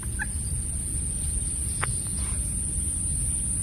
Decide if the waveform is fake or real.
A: real